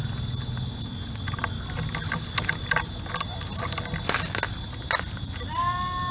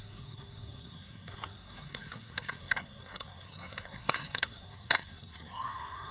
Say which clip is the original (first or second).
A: first